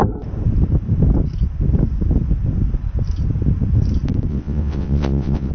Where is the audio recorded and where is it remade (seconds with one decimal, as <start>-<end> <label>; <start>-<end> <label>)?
0.0-4.3 recorded; 4.3-5.5 remade